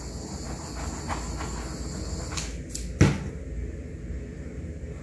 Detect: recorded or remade recorded